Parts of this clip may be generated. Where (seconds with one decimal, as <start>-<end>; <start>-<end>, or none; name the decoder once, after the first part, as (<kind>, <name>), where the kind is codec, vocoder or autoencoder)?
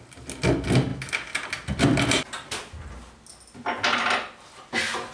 none